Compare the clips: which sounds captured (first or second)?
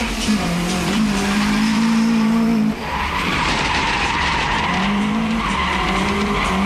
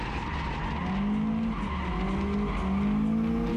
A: second